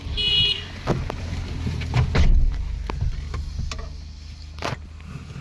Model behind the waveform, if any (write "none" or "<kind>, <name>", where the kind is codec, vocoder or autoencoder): none